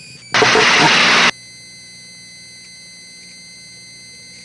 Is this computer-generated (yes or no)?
no